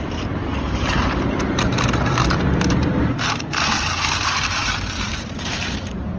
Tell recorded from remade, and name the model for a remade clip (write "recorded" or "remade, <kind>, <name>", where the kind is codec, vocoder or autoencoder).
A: remade, vocoder, BigVGAN v2